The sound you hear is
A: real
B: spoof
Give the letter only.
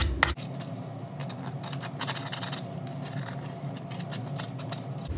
A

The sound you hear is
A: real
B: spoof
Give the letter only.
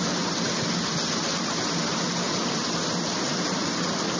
A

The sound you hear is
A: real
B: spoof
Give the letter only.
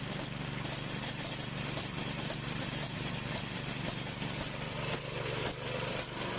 B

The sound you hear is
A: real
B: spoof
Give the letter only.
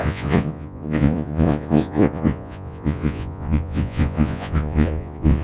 B